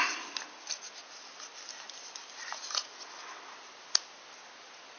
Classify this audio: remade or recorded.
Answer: recorded